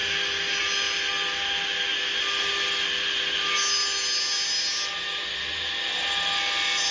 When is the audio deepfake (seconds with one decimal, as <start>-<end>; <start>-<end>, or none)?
none